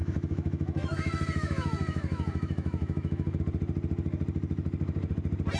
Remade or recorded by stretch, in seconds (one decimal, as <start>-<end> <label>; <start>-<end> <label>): 0.0-3.4 remade; 3.4-5.6 recorded